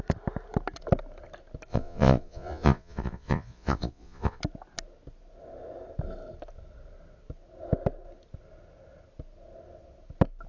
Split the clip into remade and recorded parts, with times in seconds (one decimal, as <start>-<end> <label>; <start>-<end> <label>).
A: 0.0-1.7 recorded; 1.7-4.4 remade; 4.4-10.5 recorded